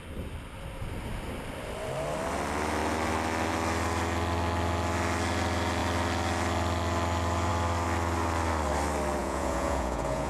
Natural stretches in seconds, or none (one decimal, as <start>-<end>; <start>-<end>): 0.0-9.2